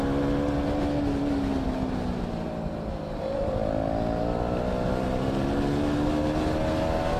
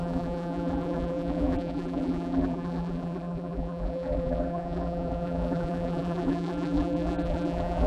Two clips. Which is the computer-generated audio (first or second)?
second